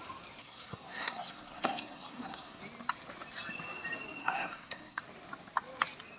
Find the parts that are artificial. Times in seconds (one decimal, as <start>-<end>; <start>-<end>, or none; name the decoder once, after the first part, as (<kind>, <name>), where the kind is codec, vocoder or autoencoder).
0.4-2.6 (codec, SNAC); 4.2-5.0